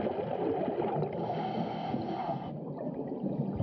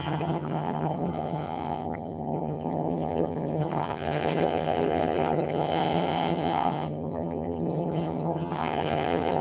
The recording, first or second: first